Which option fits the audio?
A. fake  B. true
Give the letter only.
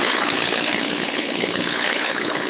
A